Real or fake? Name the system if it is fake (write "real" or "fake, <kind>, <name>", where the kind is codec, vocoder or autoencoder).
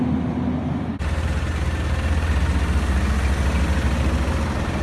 real